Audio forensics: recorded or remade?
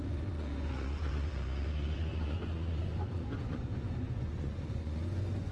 remade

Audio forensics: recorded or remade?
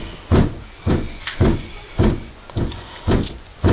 remade